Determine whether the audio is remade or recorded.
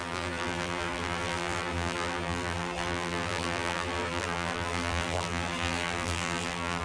remade